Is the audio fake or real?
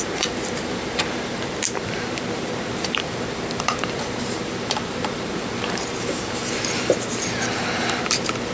fake